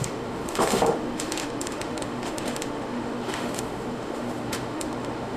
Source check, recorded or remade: remade